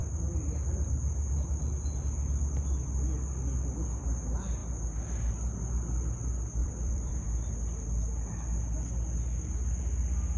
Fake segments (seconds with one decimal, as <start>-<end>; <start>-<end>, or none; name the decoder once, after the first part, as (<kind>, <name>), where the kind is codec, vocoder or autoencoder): 6.6-7.1 (vocoder, BigVGAN v2)